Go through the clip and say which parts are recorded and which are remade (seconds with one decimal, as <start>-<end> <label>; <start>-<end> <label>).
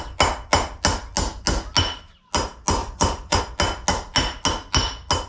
0.0-2.8 recorded; 2.8-3.4 remade; 3.4-5.3 recorded